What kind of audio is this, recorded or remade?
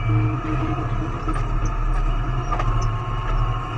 recorded